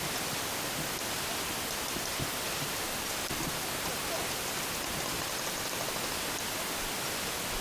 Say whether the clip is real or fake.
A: real